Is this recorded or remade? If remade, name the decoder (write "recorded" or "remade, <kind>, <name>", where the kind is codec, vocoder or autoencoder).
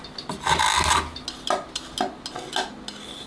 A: recorded